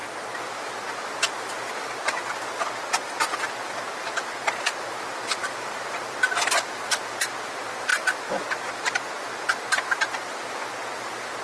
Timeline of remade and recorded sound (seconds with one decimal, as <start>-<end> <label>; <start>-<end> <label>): 0.0-11.4 recorded